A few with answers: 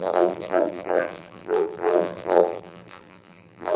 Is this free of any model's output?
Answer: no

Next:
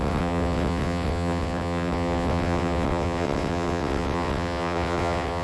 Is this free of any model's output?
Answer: no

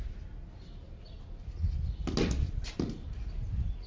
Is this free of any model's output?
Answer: yes